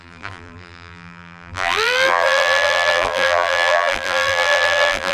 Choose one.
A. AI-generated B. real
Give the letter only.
A